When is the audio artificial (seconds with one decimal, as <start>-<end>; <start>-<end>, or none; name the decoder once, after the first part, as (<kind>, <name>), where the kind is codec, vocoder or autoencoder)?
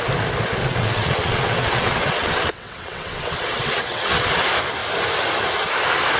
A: 0.6-4.3 (vocoder, WaveNeXt)